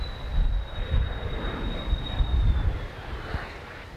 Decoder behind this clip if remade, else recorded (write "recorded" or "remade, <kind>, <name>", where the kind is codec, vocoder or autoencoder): recorded